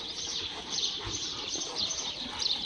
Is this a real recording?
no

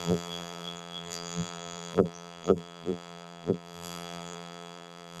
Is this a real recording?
no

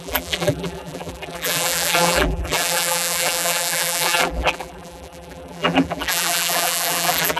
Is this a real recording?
no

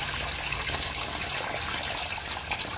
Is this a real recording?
yes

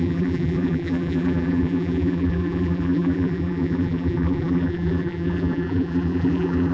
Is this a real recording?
no